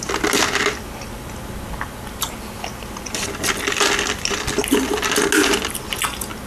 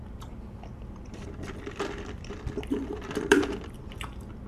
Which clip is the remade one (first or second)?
second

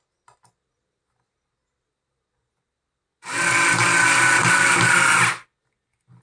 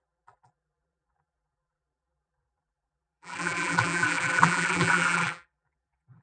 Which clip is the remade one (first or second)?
second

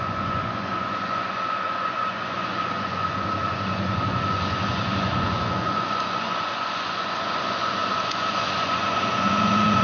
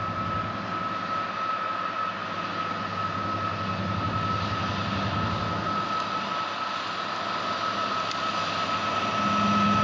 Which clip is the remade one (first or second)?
first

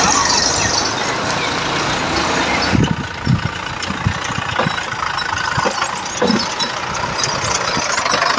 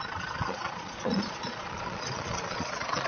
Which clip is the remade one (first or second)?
second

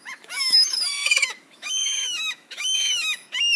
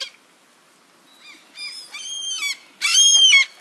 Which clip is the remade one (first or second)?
first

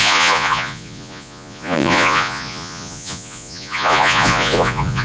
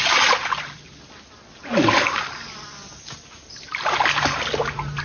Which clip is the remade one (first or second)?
first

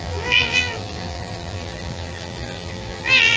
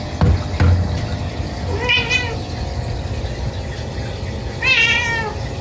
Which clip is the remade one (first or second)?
first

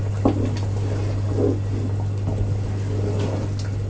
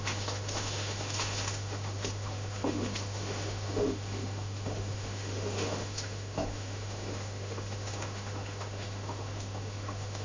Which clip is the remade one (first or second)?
second